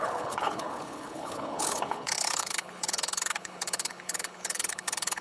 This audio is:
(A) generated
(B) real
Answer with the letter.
A